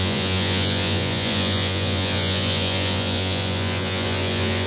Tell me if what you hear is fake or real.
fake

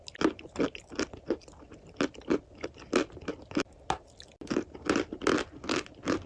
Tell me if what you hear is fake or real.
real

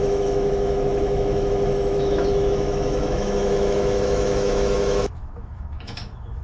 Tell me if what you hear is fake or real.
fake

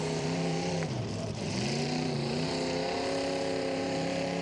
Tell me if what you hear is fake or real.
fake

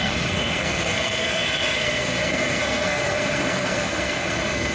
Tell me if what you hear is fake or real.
fake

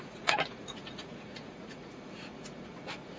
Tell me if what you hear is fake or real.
fake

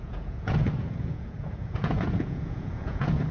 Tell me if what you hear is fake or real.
fake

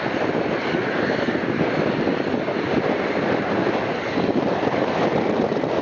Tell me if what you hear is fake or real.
real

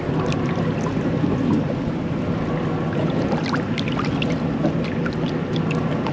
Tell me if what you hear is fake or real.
real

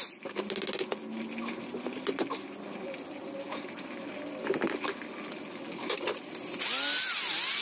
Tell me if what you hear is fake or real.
real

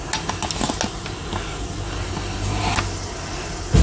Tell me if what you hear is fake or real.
real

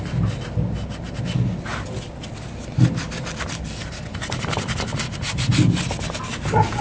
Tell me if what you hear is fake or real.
real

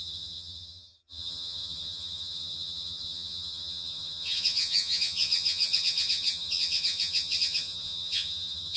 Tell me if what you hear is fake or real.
fake